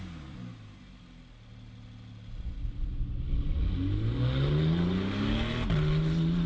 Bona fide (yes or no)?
yes